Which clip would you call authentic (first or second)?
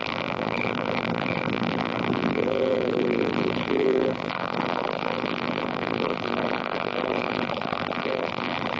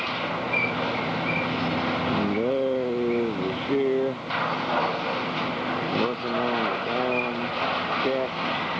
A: second